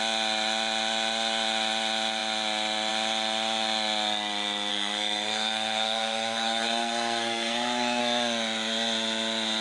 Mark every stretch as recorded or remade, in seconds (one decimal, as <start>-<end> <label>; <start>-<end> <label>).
0.0-4.7 recorded; 4.7-8.0 remade; 8.0-9.6 recorded